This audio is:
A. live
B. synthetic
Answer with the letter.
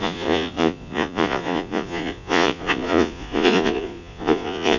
B